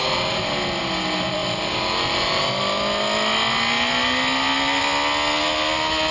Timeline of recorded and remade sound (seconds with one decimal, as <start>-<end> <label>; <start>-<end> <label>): 0.0-6.1 recorded